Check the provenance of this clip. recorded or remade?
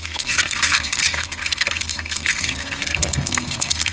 remade